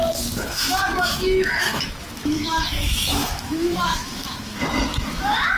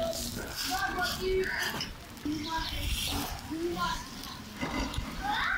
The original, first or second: second